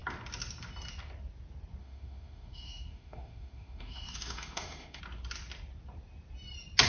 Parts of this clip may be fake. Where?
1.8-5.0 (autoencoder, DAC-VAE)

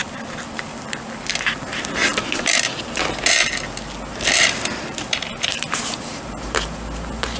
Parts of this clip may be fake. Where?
0.0-2.8 (vocoder, BigVGAN v2); 4.1-5.8

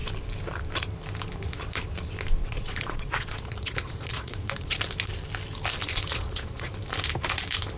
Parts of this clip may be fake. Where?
2.4-4.8 (vocoder, Vocos); 6.1-6.7

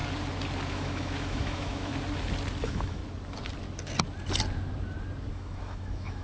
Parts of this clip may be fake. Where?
0.7-1.9 (autoencoder, DAC-VAE); 2.6-3.0; 5.3-6.2